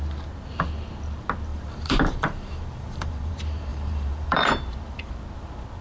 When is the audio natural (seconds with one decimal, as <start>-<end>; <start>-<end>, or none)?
0.0-1.5; 3.3-3.7; 4.5-5.8